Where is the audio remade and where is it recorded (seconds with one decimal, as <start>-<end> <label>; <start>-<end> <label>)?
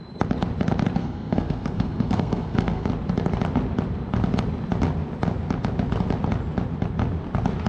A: 0.0-1.0 recorded; 1.0-2.9 remade; 2.9-7.7 recorded